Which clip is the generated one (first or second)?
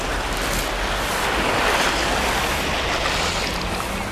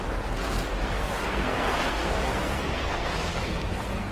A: second